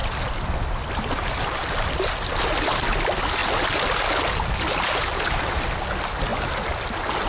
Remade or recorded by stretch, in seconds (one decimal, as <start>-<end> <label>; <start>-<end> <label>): 0.0-7.3 recorded